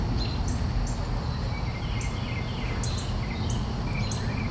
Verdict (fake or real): real